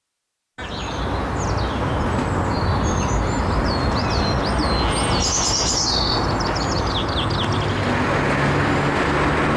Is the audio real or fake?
real